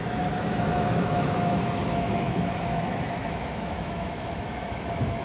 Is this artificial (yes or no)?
yes